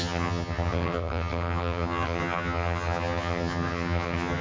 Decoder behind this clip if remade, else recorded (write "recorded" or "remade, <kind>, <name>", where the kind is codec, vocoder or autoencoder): remade, vocoder, HiFi-GAN